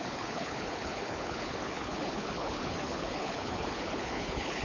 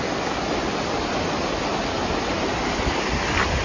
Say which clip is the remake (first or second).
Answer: first